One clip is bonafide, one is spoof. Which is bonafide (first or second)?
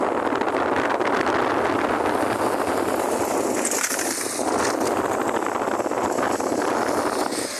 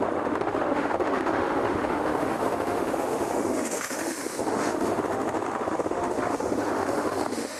first